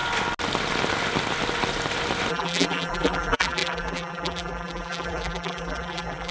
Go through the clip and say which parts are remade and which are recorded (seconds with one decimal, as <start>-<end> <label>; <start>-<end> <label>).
0.0-2.3 recorded; 2.3-6.3 remade